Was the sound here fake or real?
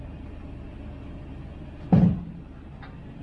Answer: real